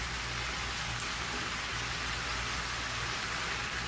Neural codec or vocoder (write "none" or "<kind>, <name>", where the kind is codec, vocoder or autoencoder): none